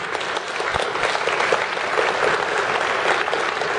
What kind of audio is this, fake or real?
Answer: real